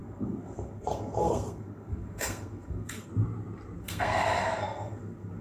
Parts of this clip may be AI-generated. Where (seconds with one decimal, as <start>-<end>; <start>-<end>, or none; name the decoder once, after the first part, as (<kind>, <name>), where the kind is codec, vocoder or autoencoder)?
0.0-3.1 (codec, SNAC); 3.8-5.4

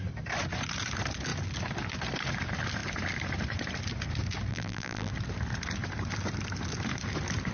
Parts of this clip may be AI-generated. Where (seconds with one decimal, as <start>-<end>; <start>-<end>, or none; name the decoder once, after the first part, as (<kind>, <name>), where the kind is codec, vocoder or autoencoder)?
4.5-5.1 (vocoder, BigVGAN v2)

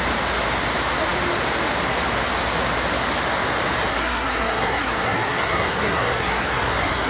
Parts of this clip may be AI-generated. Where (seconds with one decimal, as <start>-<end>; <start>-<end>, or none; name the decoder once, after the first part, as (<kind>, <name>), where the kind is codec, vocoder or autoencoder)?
3.9-7.1 (codec, SNAC)

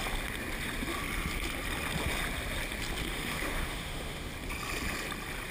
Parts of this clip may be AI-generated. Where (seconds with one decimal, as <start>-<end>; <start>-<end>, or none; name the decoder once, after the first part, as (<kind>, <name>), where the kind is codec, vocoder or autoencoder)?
3.0-4.3 (autoencoder, DAC-VAE)

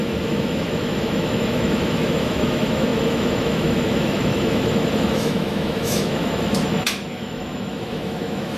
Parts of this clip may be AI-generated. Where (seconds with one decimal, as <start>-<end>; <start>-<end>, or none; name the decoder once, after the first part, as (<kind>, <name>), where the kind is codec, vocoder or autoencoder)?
0.0-8.6 (autoencoder, DAC-VAE)

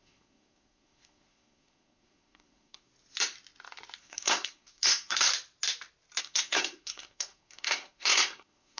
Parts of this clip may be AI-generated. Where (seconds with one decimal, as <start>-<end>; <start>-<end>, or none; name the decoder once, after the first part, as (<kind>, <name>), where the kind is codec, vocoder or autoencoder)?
0.0-2.9 (codec, SNAC); 4.0-5.3; 6.2-8.8

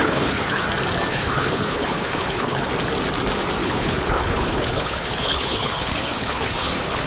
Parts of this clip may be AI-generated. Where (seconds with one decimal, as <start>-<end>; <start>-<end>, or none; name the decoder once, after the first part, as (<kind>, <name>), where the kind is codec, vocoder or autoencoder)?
0.0-0.6 (codec, HILCodec); 1.1-2.7; 3.6-7.1